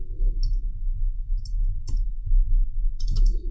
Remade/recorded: remade